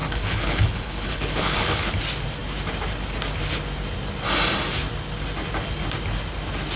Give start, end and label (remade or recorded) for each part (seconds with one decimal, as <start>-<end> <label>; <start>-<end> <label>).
0.0-1.9 remade; 1.9-6.8 recorded